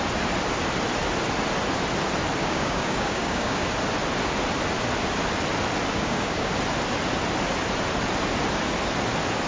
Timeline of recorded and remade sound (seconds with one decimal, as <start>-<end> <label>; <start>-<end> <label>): 0.0-2.4 recorded; 2.4-3.7 remade; 3.7-5.9 recorded; 5.9-6.5 remade; 6.5-9.5 recorded